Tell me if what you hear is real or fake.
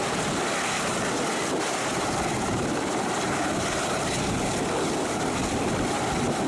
real